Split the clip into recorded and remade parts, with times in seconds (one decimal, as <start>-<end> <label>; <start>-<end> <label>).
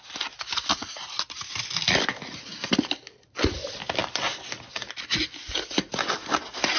0.0-6.8 recorded